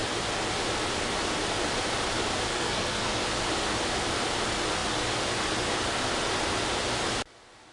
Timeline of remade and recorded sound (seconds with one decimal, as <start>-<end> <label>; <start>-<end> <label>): 0.0-2.5 recorded; 2.5-3.2 remade; 3.2-7.7 recorded